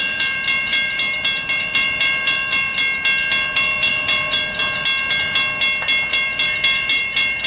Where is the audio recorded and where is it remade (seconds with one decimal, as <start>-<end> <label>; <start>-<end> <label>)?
0.0-2.8 remade; 2.8-3.9 recorded; 3.9-4.6 remade; 4.6-6.1 recorded; 6.1-7.5 remade